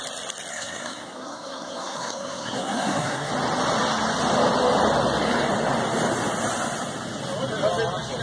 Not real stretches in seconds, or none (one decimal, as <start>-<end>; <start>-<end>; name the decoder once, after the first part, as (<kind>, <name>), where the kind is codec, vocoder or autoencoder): 0.5-3.3 (codec, SNAC)